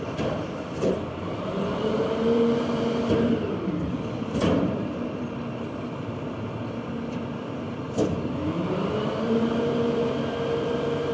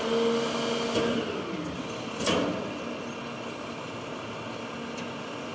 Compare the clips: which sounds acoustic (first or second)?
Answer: second